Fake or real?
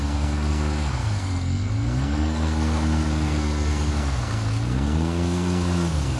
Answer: fake